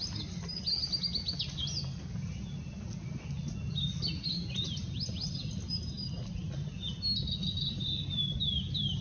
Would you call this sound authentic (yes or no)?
yes